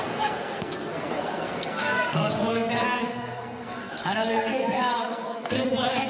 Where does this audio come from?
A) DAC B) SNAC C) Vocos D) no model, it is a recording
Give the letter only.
B